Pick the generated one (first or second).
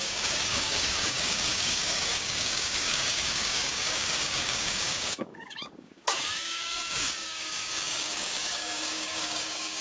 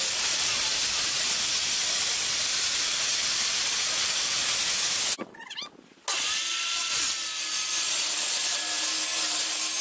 first